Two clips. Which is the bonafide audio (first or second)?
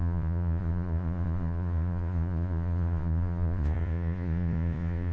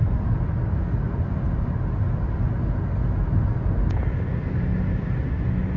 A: second